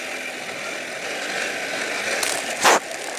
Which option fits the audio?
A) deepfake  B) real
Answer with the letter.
B